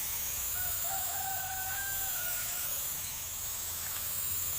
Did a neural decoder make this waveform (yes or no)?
yes